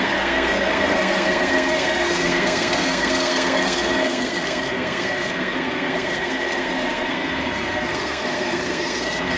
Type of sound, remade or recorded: remade